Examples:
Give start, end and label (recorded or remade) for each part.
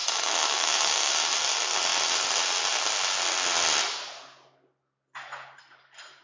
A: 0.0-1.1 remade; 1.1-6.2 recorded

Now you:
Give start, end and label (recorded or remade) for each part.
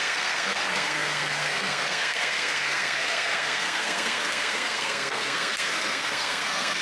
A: 0.0-6.8 remade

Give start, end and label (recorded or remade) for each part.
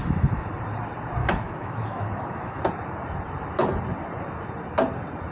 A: 0.0-0.5 remade; 0.5-1.2 recorded; 1.2-2.6 remade; 2.6-5.3 recorded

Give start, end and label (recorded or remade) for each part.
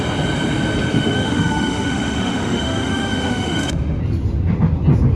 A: 0.0-0.9 recorded; 0.9-4.0 remade; 4.0-5.2 recorded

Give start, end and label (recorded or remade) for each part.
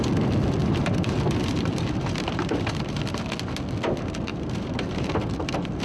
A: 0.0-0.6 recorded; 0.6-3.2 remade; 3.2-4.3 recorded; 4.3-5.8 remade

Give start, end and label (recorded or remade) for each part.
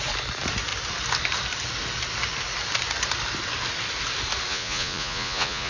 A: 0.0-4.5 recorded; 4.5-5.7 remade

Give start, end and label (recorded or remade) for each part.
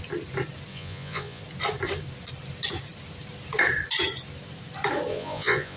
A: 0.0-0.7 recorded; 0.7-1.4 remade; 1.4-5.1 recorded; 5.1-5.8 remade